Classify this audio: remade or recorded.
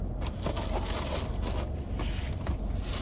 recorded